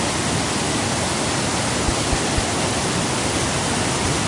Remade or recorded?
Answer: recorded